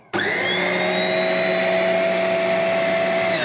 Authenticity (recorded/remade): recorded